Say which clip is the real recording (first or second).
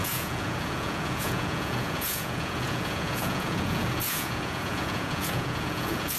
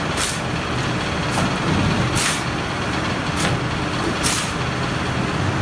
second